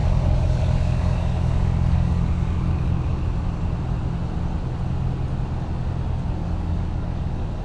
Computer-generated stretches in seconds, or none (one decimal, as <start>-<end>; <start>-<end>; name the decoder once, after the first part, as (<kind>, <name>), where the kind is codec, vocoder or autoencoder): 0.0-3.2 (codec, DAC); 6.4-7.6